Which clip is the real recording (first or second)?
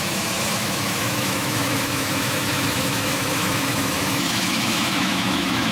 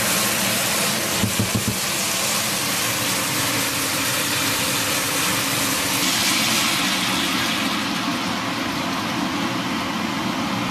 second